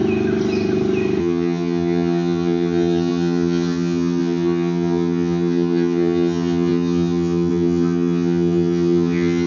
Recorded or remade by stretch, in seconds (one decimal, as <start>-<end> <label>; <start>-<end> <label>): 0.0-1.2 recorded; 1.2-9.5 remade